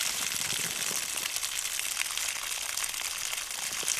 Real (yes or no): yes